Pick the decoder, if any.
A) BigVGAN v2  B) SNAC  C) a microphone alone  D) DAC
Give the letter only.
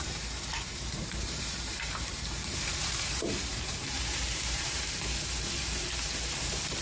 A